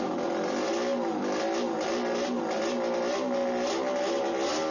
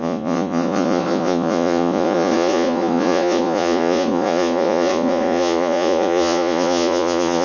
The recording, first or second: first